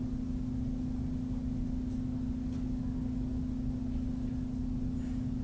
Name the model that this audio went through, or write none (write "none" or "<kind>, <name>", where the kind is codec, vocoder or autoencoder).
none